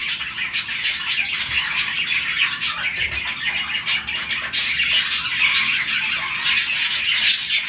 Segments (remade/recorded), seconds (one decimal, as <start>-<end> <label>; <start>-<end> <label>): 0.0-7.7 recorded